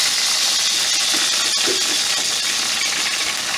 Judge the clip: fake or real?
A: real